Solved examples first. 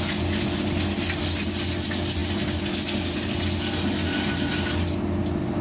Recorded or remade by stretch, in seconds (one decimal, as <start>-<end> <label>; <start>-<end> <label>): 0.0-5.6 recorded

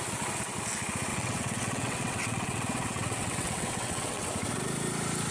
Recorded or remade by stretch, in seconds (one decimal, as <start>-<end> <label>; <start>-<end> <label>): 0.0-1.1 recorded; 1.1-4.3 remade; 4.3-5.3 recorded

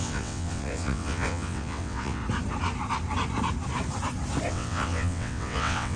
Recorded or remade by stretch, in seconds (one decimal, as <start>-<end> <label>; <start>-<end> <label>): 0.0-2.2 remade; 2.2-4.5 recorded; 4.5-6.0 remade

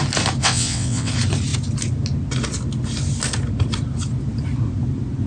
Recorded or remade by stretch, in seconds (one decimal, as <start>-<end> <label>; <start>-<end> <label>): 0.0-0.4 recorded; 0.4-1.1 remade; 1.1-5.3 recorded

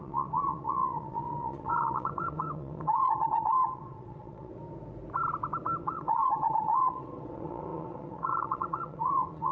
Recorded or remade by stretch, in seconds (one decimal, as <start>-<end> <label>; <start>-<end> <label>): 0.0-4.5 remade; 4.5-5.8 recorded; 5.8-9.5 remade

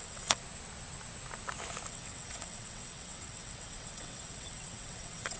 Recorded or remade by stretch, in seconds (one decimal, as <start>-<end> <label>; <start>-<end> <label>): 0.0-0.4 remade; 0.4-1.9 recorded; 1.9-5.4 remade